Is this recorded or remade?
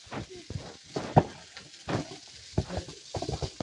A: recorded